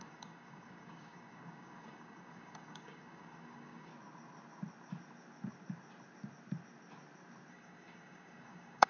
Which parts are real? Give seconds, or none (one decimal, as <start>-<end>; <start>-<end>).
3.9-7.5